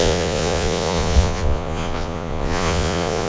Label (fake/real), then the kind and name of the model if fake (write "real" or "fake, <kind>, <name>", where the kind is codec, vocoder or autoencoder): fake, vocoder, Vocos